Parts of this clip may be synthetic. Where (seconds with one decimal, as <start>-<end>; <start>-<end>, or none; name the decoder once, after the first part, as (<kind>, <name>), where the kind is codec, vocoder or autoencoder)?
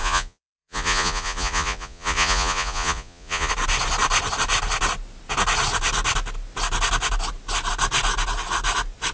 0.0-3.5 (vocoder, Vocos)